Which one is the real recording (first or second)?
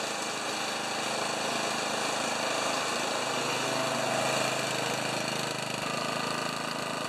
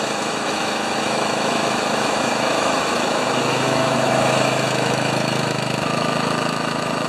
first